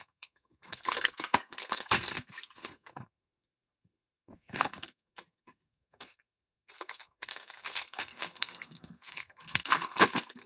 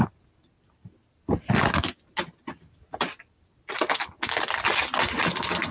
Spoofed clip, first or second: first